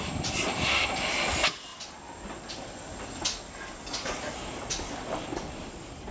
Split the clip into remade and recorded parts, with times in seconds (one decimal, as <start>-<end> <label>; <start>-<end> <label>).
0.0-6.1 recorded